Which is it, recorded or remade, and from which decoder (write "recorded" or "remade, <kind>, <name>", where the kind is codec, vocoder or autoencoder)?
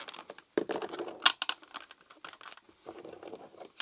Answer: recorded